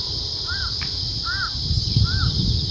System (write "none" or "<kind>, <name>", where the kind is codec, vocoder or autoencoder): vocoder, BigVGAN v2